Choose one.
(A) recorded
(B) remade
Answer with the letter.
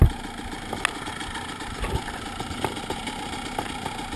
A